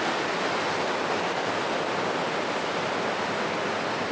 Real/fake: real